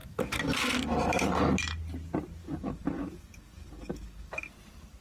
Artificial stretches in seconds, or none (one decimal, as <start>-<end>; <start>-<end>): 0.0-0.6; 2.4-4.5

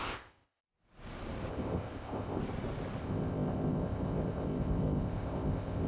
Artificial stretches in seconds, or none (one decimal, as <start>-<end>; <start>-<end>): 0.0-0.6; 1.5-2.4; 3.0-5.9

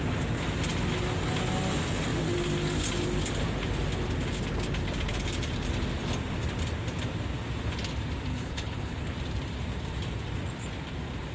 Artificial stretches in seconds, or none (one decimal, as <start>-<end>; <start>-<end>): 8.3-9.1

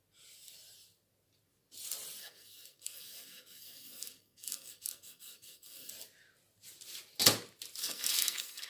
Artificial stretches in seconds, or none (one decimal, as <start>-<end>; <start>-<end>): 2.2-5.9; 7.8-8.7